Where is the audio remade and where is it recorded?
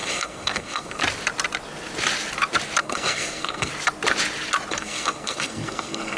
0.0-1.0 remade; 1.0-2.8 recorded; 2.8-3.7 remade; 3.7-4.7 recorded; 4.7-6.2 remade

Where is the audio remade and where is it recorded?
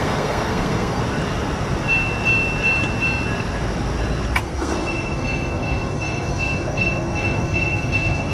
0.0-1.0 remade; 1.0-4.4 recorded; 4.4-8.3 remade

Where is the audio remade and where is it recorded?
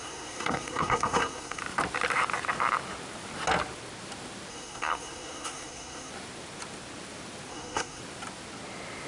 0.0-1.6 remade; 1.6-4.5 recorded; 4.5-6.1 remade; 6.1-7.5 recorded; 7.5-8.0 remade; 8.0-9.1 recorded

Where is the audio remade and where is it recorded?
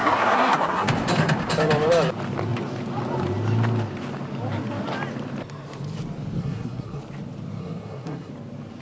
0.0-0.9 remade; 0.9-6.4 recorded; 6.4-7.0 remade; 7.0-7.6 recorded; 7.6-8.3 remade; 8.3-8.8 recorded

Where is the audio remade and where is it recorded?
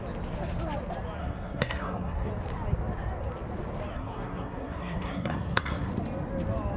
0.0-1.2 recorded; 1.2-2.3 remade; 2.3-3.9 recorded; 3.9-5.9 remade; 5.9-6.8 recorded